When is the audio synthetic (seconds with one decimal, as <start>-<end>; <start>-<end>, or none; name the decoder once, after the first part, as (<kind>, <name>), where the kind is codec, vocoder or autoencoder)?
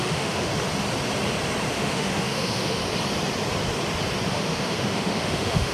0.0-0.5 (autoencoder, DAC-VAE); 1.7-2.8; 4.3-5.7